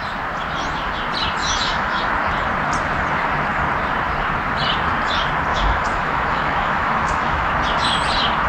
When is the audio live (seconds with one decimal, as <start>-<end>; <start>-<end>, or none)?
0.0-1.4; 2.1-5.5; 7.5-8.5